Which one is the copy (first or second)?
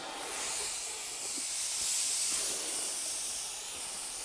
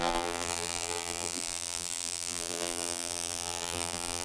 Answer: second